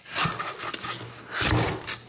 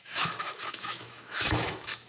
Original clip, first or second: first